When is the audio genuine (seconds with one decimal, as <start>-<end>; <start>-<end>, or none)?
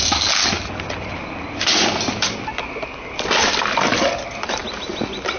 0.0-5.4